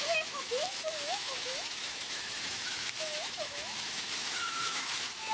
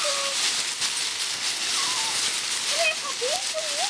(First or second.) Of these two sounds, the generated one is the first